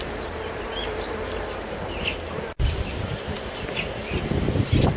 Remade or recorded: remade